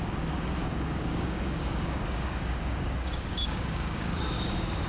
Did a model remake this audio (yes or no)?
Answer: yes